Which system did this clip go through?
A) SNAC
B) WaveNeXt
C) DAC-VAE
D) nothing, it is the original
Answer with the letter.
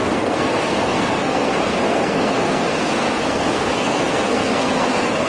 A